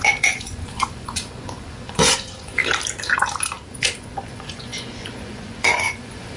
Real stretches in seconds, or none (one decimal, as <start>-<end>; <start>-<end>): 2.6-3.7